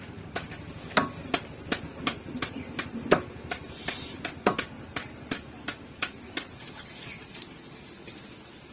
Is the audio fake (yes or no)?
no